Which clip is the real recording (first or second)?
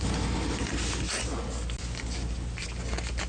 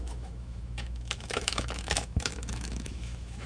first